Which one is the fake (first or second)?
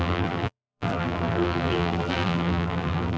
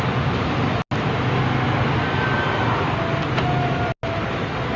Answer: first